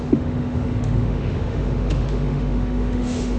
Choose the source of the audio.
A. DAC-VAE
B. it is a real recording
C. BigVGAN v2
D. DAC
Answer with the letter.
A